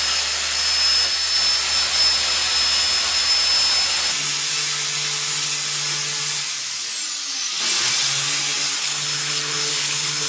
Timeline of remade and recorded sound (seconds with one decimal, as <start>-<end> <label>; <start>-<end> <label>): 0.0-8.8 recorded; 8.8-10.3 remade